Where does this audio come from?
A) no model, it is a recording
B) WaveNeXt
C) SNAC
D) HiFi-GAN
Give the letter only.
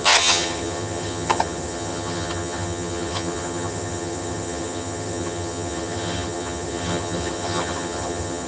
D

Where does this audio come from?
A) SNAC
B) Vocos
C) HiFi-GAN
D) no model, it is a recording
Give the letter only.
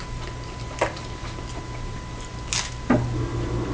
D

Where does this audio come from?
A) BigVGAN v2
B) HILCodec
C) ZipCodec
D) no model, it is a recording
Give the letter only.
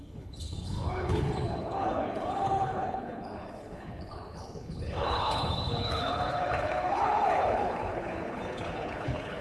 B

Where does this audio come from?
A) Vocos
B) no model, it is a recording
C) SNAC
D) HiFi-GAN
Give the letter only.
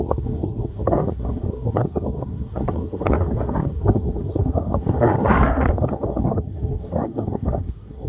C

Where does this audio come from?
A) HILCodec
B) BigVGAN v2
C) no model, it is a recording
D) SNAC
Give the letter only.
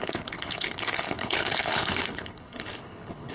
A